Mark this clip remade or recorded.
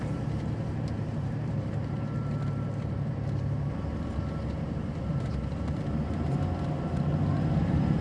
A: remade